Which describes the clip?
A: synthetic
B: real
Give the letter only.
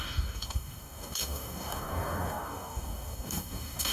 A